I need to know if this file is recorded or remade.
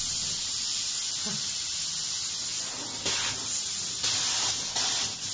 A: recorded